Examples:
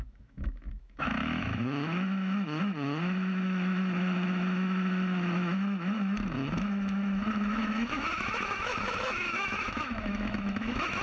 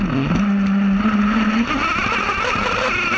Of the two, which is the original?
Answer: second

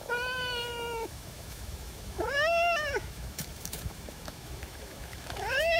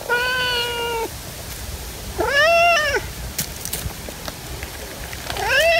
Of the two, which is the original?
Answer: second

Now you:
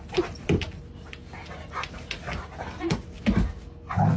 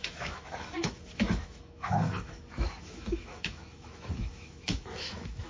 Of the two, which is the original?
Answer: first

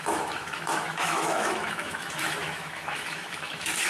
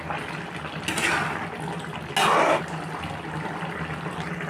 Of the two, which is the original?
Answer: second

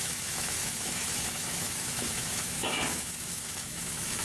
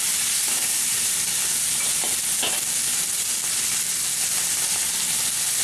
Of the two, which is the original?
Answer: second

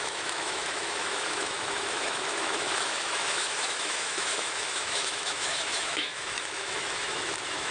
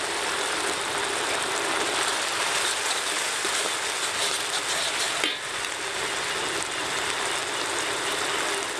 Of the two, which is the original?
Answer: second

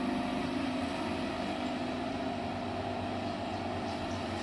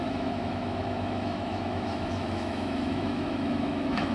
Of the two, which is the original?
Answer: first